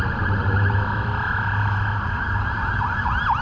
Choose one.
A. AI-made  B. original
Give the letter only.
A